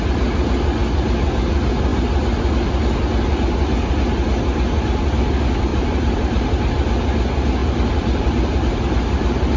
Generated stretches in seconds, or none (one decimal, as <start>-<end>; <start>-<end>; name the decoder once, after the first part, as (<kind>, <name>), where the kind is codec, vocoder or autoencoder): 5.7-6.7 (vocoder, BigVGAN v2); 7.6-9.6